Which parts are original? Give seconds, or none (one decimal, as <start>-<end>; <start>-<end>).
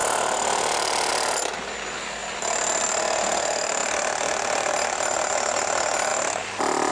0.0-6.9